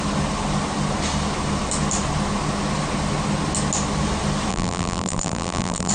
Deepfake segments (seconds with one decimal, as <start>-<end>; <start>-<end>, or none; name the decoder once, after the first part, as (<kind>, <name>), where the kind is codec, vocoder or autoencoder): 4.5-5.9 (vocoder, BigVGAN v2)